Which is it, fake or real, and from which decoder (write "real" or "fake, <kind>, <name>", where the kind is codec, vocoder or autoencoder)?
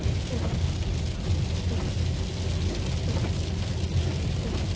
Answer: real